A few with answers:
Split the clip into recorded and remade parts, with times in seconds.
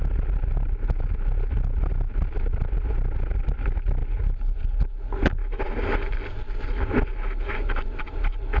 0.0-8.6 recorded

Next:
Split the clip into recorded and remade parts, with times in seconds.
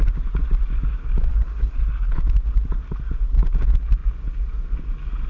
0.0-1.3 recorded; 1.3-2.2 remade; 2.2-5.3 recorded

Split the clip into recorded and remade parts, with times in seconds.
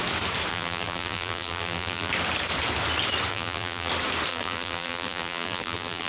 0.0-0.5 recorded; 0.5-2.1 remade; 2.1-3.3 recorded; 3.3-3.9 remade; 3.9-4.3 recorded; 4.3-6.1 remade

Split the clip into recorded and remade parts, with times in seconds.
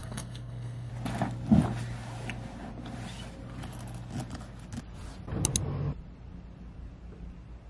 0.0-0.9 remade; 0.9-7.7 recorded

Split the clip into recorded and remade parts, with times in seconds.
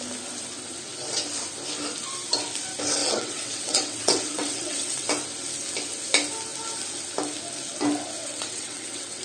0.0-3.0 recorded; 3.0-5.1 remade; 5.1-8.2 recorded; 8.2-9.2 remade